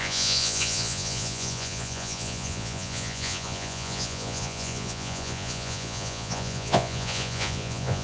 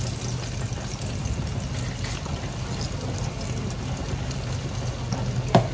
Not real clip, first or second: first